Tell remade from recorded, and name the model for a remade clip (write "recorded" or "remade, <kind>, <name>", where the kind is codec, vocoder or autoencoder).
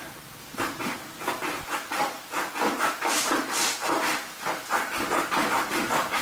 remade, vocoder, BigVGAN v2